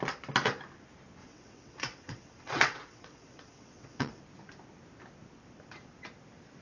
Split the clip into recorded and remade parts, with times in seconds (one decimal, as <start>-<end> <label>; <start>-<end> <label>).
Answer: 0.0-1.2 recorded; 1.2-4.2 remade; 4.2-6.6 recorded